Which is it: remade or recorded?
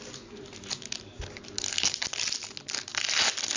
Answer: recorded